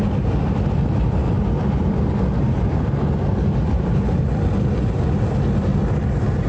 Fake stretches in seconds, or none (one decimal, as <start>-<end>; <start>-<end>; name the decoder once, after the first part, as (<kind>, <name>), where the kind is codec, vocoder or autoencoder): none